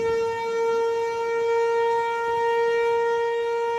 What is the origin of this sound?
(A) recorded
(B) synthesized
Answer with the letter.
A